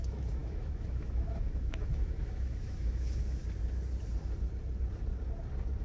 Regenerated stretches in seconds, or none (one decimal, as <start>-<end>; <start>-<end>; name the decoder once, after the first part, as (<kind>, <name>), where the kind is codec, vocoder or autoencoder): 0.0-3.4 (autoencoder, DAC-VAE)